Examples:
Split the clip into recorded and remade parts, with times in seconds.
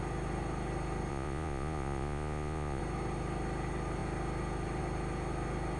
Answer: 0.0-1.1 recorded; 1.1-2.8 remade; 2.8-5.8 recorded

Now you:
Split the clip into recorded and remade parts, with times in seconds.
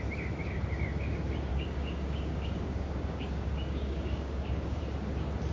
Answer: 0.0-1.5 recorded; 1.5-4.8 remade; 4.8-5.5 recorded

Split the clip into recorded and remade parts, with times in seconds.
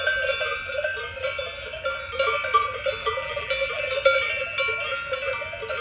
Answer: 0.0-3.0 recorded; 3.0-3.8 remade; 3.8-5.8 recorded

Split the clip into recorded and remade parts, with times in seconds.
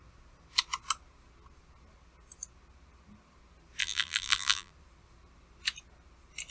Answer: 0.0-3.8 recorded; 3.8-4.7 remade; 4.7-6.5 recorded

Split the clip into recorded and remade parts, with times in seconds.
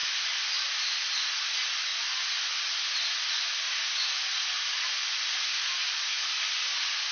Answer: 0.0-7.1 recorded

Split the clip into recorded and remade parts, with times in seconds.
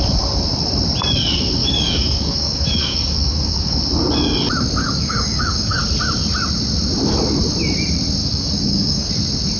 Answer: 0.0-1.6 recorded; 1.6-3.8 remade; 3.8-4.8 recorded; 4.8-5.8 remade; 5.8-8.2 recorded; 8.2-9.1 remade; 9.1-9.6 recorded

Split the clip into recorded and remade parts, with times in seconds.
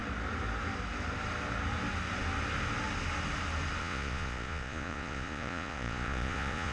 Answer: 0.0-3.8 recorded; 3.8-6.7 remade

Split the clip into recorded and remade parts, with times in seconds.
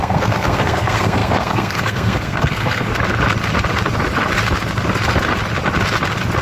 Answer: 0.0-2.9 remade; 2.9-6.4 recorded